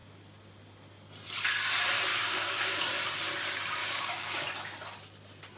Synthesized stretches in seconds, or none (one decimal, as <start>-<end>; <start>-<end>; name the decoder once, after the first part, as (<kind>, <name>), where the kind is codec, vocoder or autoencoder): 2.1-2.8 (codec, DAC); 3.8-4.4